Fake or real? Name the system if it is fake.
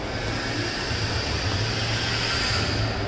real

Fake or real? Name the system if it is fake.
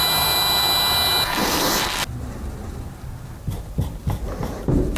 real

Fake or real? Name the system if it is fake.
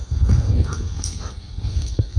fake, codec, SNAC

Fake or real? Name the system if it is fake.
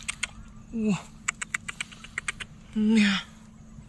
real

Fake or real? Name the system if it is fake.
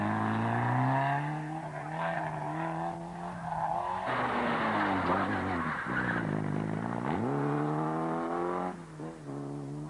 real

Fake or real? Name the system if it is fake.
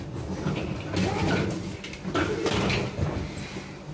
real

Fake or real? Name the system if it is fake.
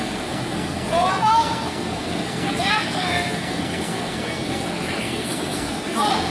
fake, codec, SNAC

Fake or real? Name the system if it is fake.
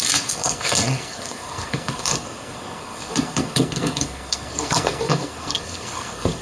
fake, codec, SNAC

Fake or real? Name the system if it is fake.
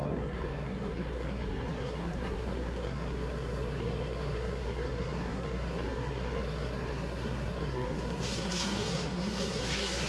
fake, codec, SNAC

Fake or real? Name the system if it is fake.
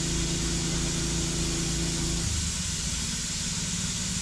real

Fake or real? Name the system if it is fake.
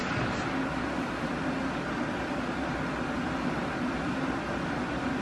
real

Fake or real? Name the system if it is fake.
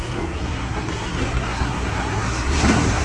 fake, codec, SNAC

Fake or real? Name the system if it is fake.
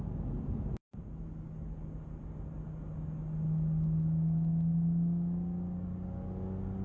real